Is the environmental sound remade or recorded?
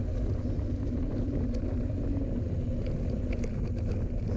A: recorded